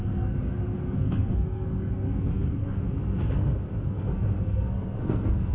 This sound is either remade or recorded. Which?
remade